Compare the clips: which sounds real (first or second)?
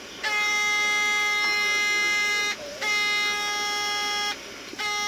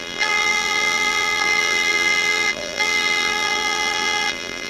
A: first